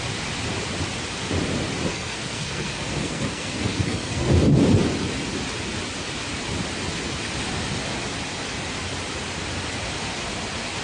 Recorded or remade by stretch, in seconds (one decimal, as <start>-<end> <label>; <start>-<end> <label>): 0.0-1.9 recorded; 1.9-4.3 remade; 4.3-10.8 recorded

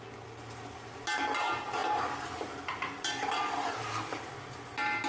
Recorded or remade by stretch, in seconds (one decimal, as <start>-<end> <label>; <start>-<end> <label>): 0.0-5.1 recorded